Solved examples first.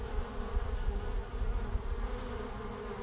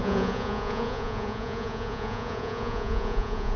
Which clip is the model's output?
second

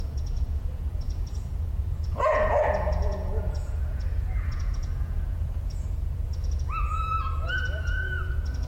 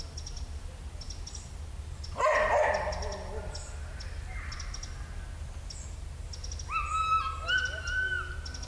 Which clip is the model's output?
first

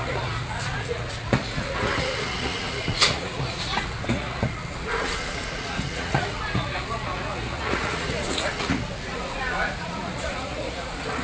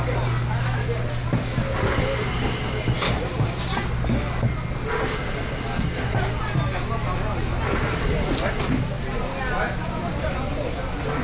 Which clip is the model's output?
first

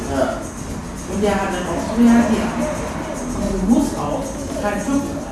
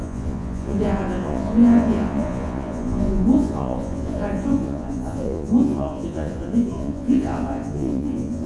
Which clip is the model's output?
second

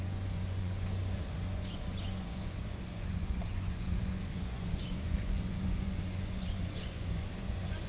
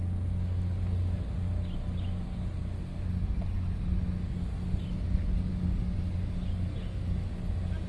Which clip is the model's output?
first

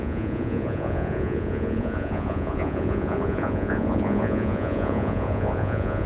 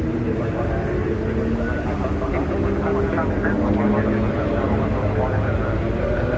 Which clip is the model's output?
first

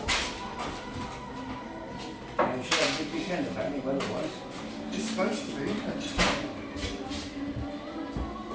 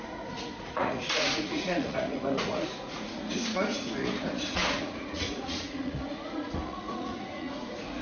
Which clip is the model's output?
second